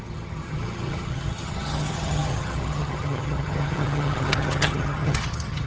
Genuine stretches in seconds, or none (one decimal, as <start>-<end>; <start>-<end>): none

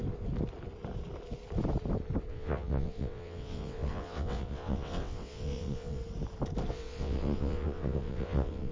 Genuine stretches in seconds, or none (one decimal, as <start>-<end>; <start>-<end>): 0.0-2.3; 6.0-6.7

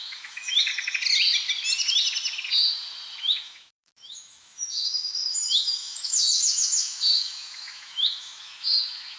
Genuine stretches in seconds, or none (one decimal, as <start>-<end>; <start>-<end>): 0.7-3.2

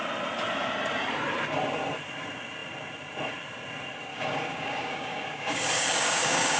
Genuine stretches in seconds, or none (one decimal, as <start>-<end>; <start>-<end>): 0.0-4.1